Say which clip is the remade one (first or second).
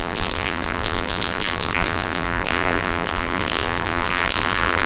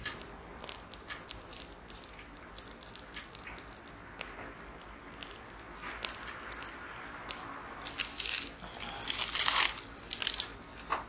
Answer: first